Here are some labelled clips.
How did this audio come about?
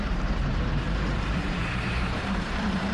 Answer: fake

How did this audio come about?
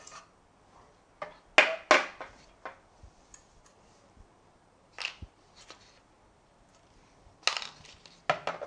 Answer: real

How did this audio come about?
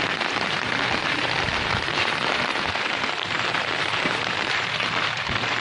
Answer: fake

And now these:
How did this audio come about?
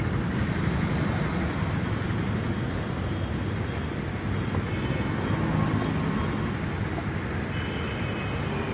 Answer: real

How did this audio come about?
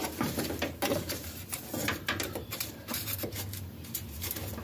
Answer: fake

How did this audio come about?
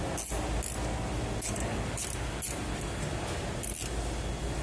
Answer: real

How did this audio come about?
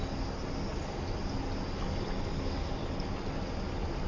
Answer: real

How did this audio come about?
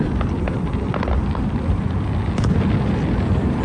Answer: fake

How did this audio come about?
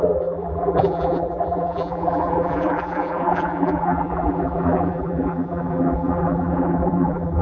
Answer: fake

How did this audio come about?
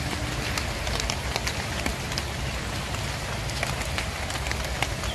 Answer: real